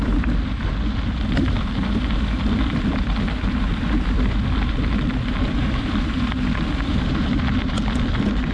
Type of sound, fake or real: fake